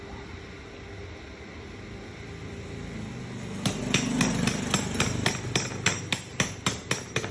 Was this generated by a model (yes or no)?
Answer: no